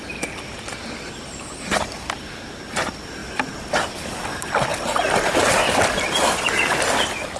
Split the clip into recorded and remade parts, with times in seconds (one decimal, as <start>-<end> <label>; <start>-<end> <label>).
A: 0.0-7.4 recorded